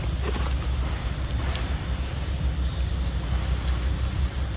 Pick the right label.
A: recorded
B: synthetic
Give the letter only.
A